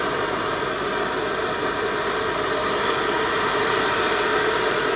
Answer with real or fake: real